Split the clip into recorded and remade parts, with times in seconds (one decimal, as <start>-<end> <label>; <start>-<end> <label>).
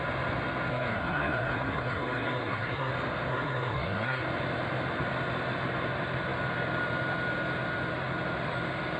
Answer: 0.0-0.7 recorded; 0.7-2.9 remade; 2.9-3.3 recorded; 3.3-4.2 remade; 4.2-9.0 recorded